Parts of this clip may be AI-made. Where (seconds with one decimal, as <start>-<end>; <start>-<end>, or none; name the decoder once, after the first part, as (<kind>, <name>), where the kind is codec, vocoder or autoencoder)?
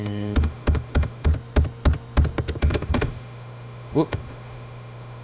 0.0-1.3 (autoencoder, DAC-VAE); 2.6-5.2